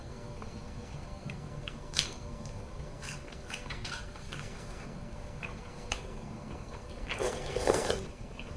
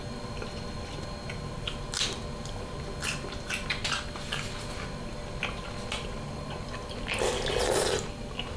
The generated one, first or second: first